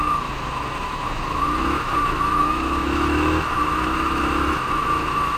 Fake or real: fake